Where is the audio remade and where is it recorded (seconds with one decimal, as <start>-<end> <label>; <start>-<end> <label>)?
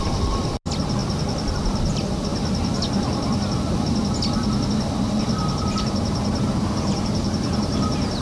0.0-5.4 recorded; 5.4-8.2 remade